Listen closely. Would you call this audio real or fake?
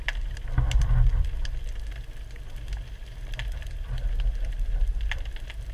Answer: real